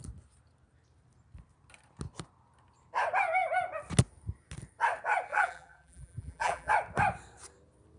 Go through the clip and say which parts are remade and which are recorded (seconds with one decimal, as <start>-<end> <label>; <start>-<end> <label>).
0.0-5.3 recorded; 5.3-6.7 remade; 6.7-8.0 recorded